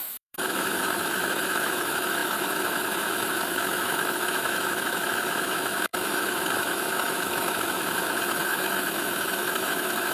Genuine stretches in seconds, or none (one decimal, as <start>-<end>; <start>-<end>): none

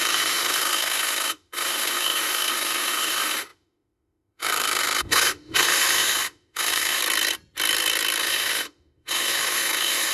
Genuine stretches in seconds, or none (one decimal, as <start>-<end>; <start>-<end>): 7.0-8.2

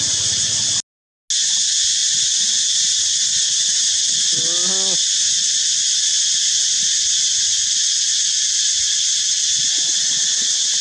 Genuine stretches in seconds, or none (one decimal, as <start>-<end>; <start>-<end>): 0.0-10.8

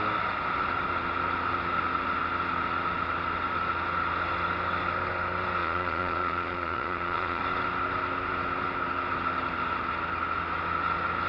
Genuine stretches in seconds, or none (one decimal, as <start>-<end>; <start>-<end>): 0.0-5.6; 7.4-11.3